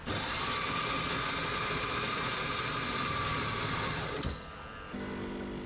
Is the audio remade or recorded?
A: recorded